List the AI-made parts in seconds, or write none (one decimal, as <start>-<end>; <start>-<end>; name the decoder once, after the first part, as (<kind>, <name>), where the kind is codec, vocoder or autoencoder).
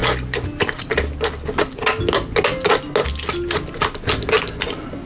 none